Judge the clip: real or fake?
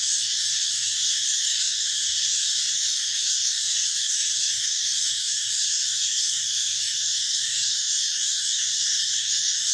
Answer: fake